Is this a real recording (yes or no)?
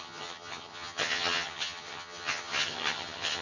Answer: no